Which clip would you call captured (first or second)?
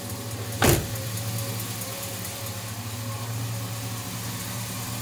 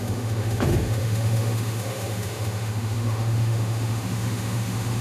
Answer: first